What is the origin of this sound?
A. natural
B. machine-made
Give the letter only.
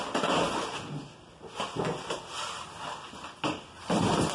A